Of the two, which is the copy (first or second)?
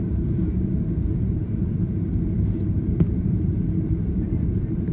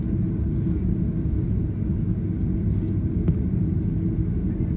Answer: first